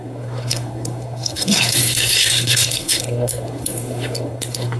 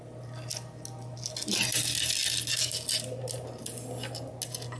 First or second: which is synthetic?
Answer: first